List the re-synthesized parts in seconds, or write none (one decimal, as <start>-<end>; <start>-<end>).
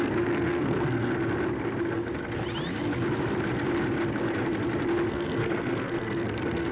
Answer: 0.0-1.1; 5.1-6.7